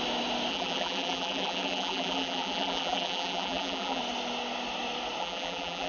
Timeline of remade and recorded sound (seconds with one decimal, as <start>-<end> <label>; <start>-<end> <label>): 0.0-0.5 recorded; 0.5-4.0 remade; 4.0-5.2 recorded; 5.2-5.9 remade